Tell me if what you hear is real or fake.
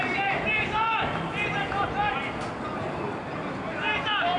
real